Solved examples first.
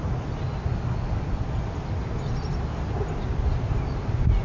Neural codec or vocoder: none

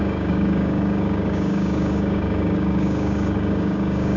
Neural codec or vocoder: codec, DAC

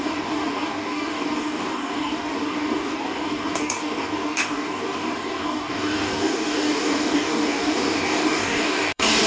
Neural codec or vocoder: codec, DAC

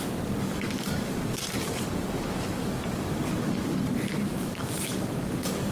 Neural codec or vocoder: codec, DAC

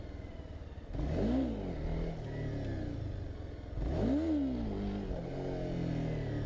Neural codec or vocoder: none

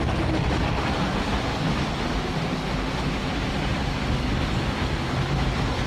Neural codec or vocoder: none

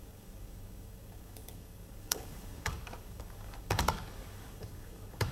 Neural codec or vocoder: codec, DAC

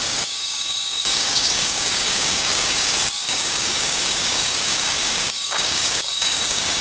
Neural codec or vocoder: codec, DAC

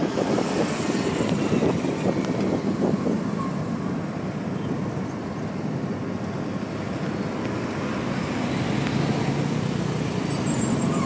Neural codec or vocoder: none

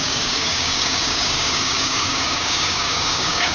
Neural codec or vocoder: codec, DAC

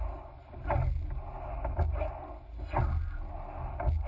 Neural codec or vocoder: none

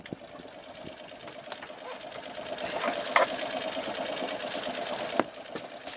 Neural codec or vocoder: none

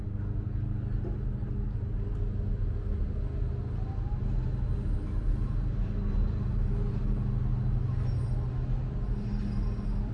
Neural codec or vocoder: none